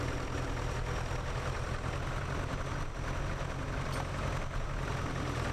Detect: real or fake real